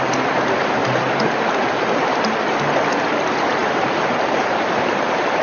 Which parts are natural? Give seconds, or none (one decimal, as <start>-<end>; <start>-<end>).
0.0-0.8; 2.6-3.6